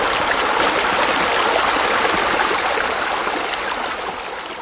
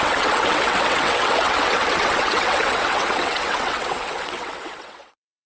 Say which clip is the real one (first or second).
first